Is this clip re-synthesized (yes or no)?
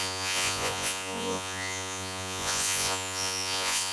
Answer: yes